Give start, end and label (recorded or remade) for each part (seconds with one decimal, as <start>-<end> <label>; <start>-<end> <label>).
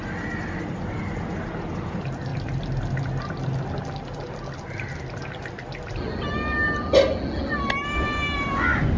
0.0-9.0 recorded